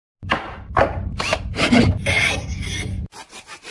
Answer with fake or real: real